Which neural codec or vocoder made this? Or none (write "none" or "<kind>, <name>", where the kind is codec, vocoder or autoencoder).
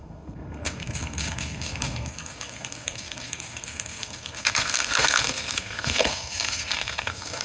codec, SNAC